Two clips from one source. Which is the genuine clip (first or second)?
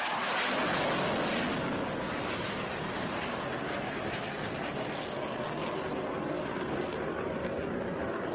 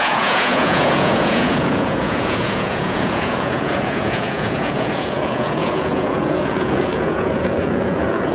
first